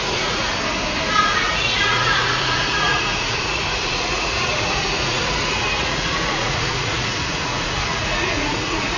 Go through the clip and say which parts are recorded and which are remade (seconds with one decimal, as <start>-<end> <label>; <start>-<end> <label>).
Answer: 0.0-0.5 remade; 0.5-1.2 recorded; 1.2-9.0 remade